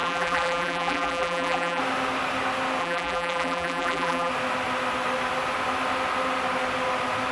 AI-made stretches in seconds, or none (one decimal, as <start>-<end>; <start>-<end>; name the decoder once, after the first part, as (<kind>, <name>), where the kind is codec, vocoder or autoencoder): 0.0-1.8 (vocoder, BigVGAN v2); 2.8-4.3